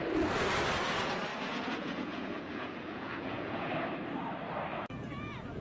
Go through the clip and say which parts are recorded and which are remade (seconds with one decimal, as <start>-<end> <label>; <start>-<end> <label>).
0.0-1.3 recorded; 1.3-3.7 remade; 3.7-4.7 recorded; 4.7-5.6 remade